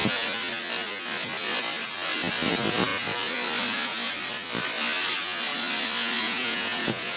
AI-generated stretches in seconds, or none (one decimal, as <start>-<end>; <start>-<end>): 6.2-7.2